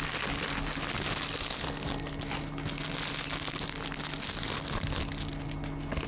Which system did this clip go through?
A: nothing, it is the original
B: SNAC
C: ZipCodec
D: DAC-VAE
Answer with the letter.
A